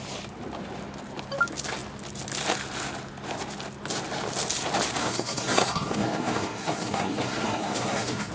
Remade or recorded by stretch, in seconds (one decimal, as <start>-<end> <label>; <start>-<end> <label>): 0.0-5.0 recorded; 5.0-8.3 remade